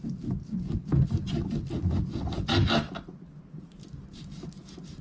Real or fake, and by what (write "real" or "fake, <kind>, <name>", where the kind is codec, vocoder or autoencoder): real